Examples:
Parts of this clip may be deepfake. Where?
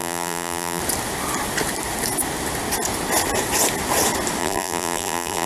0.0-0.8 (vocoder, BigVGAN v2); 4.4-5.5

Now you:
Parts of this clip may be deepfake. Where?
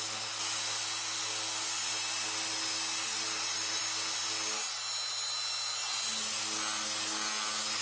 3.0-3.8 (vocoder, BigVGAN v2)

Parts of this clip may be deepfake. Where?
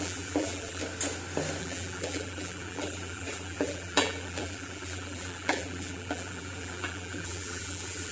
0.0-0.8 (vocoder, BigVGAN v2); 1.6-8.1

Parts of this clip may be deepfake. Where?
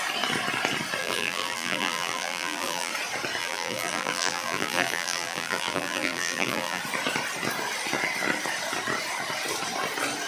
1.0-2.9 (vocoder, BigVGAN v2); 3.4-6.8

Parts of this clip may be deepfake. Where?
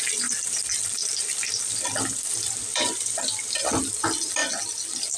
2.7-3.8 (vocoder, BigVGAN v2)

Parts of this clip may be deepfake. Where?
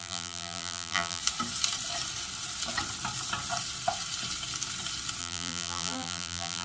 0.0-1.2 (vocoder, BigVGAN v2); 5.2-6.6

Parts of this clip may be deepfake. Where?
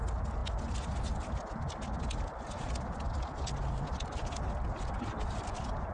0.0-0.4 (vocoder, BigVGAN v2); 3.9-5.9